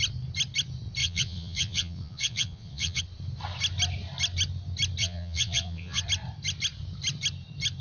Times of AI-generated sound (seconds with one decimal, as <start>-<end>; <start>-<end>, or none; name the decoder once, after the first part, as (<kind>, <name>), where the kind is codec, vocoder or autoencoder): 1.0-3.0 (vocoder, Vocos); 5.0-6.0